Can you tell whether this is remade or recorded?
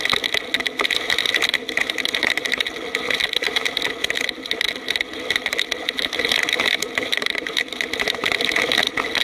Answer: recorded